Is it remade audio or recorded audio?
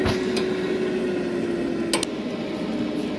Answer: recorded